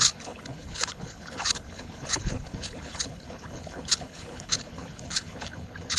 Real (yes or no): no